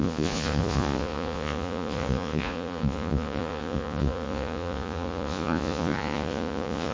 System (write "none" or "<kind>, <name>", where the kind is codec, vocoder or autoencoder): vocoder, Vocos